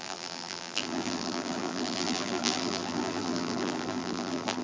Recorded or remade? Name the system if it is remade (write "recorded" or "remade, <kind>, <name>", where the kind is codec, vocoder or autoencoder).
remade, vocoder, BigVGAN v2